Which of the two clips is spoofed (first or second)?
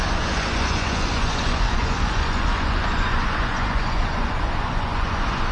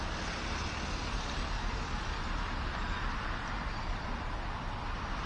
first